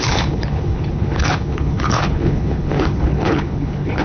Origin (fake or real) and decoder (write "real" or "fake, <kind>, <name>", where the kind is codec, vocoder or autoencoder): fake, codec, HILCodec